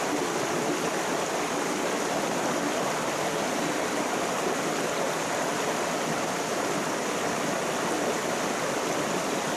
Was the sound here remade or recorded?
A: recorded